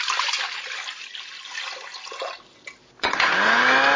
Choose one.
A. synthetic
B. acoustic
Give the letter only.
B